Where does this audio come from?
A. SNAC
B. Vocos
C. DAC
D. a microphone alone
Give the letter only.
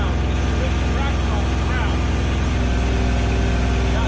D